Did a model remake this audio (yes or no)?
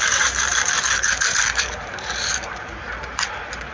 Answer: yes